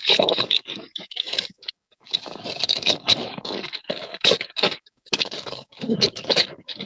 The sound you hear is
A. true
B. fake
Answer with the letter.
B